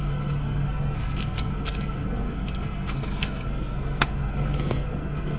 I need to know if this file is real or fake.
fake